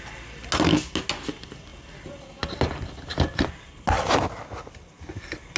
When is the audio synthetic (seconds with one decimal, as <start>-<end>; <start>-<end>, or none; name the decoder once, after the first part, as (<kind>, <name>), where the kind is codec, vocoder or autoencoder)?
none